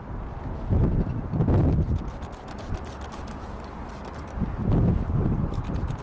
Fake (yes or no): no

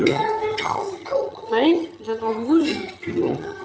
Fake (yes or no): yes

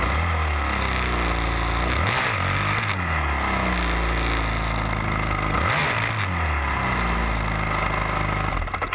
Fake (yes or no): no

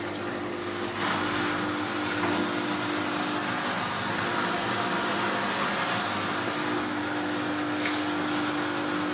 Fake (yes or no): no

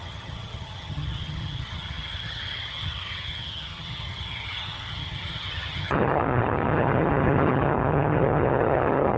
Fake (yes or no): yes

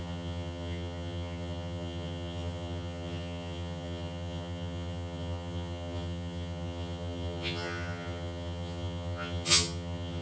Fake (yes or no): yes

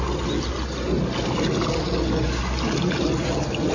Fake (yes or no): no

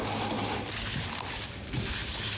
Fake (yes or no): no